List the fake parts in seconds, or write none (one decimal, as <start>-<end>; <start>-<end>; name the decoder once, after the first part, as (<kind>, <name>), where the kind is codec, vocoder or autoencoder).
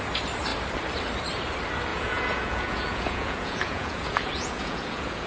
1.9-5.3 (vocoder, Vocos)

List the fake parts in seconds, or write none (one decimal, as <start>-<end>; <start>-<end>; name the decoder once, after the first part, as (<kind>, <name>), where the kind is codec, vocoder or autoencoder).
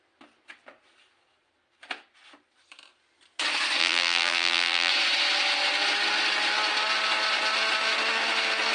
3.8-4.9 (vocoder, BigVGAN v2)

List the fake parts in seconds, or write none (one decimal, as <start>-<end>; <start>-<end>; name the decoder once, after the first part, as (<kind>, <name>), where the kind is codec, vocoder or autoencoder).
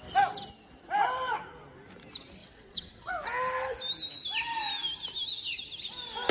2.4-3.1 (vocoder, WaveNeXt)